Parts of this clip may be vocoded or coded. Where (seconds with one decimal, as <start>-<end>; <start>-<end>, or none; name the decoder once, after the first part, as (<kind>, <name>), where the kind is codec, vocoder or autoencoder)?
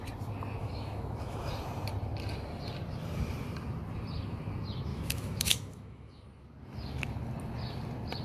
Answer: 0.6-1.5 (autoencoder, DAC-VAE); 4.9-6.2